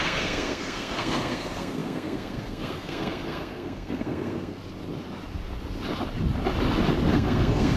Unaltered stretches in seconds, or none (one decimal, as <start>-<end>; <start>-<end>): 4.6-7.1